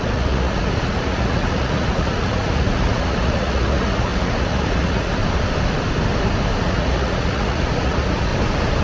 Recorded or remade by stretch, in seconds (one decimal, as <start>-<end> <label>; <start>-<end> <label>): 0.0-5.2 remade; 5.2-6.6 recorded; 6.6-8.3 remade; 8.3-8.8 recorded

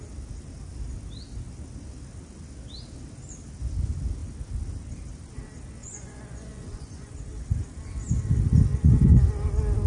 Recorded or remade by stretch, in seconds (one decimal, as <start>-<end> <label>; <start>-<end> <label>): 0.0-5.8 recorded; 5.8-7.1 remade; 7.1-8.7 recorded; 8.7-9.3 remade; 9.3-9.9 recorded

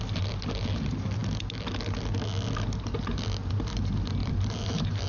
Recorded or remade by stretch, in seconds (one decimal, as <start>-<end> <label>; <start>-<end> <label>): 0.0-4.2 recorded; 4.2-5.1 remade

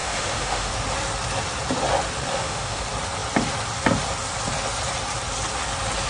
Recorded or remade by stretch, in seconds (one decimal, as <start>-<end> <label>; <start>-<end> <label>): 0.0-0.7 remade; 0.7-2.3 recorded; 2.3-2.8 remade; 2.8-6.1 recorded